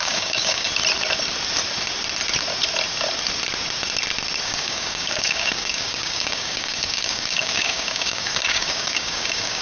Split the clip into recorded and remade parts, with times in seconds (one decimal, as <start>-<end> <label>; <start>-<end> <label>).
0.0-0.7 remade; 0.7-4.4 recorded; 4.4-9.6 remade